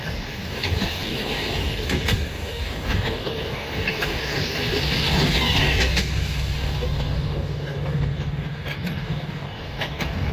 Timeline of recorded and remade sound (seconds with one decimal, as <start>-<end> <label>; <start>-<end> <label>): 0.0-10.3 remade